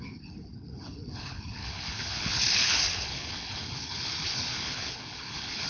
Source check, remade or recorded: remade